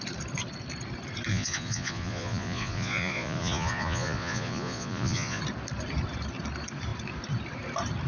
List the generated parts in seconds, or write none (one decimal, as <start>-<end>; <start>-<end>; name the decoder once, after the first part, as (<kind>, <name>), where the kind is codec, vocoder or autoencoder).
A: 1.3-5.4 (vocoder, Vocos)